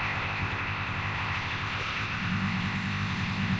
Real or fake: fake